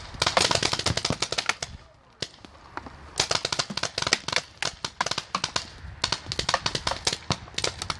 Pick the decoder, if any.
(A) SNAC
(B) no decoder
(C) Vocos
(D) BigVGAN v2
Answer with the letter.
B